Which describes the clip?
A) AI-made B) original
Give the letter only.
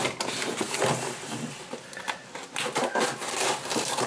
B